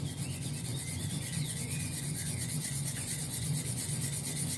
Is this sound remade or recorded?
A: remade